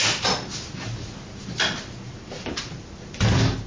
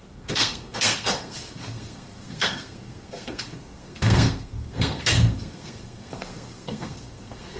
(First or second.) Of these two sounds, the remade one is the second